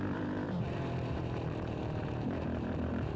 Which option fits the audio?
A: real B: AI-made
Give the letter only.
B